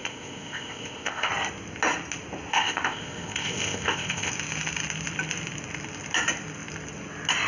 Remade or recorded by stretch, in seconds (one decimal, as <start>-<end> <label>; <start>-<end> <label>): 0.0-1.3 remade; 1.3-2.5 recorded; 2.5-4.3 remade; 4.3-7.5 recorded